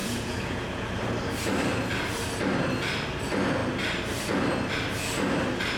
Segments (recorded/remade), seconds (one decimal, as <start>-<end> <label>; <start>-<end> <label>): 0.0-0.9 remade; 0.9-5.8 recorded